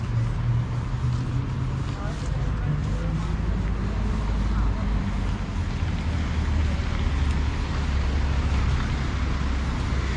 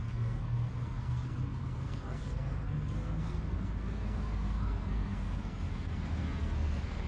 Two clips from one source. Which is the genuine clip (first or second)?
first